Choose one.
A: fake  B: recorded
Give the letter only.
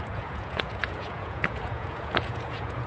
A